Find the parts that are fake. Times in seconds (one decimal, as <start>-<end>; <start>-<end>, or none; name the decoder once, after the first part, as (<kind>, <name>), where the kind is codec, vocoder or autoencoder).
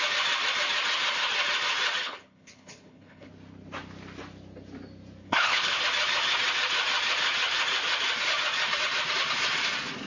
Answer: 2.0-3.3 (codec, HILCodec); 5.2-5.8